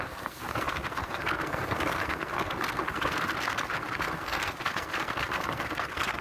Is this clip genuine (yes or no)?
no